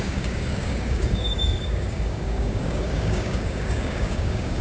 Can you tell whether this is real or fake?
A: fake